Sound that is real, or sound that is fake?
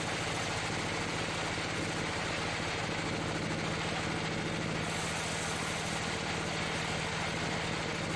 real